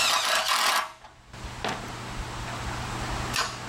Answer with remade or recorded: recorded